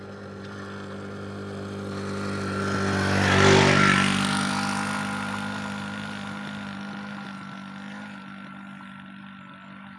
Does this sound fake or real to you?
real